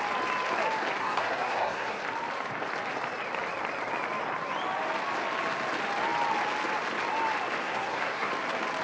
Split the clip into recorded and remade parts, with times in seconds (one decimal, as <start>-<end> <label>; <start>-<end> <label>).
0.0-1.0 recorded; 1.0-2.0 remade; 2.0-7.6 recorded; 7.6-8.3 remade; 8.3-8.8 recorded